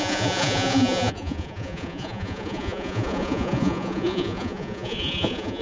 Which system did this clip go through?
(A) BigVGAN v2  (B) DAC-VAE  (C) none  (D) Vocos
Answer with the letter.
D